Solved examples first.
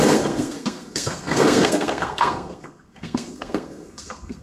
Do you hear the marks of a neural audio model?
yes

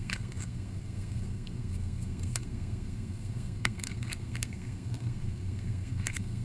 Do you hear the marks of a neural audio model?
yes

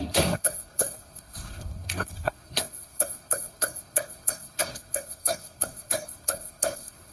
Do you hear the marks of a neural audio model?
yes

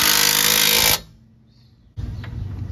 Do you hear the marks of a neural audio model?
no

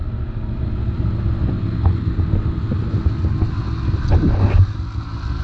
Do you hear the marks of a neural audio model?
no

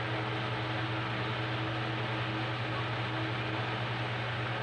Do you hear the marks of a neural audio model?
no